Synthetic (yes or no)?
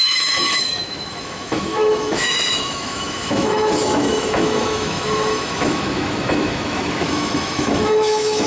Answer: yes